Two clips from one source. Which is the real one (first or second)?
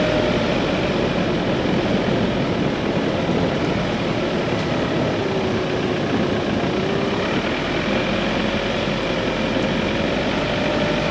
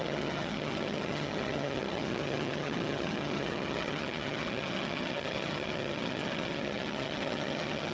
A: first